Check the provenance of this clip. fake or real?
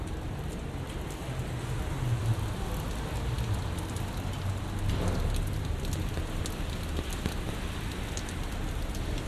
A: real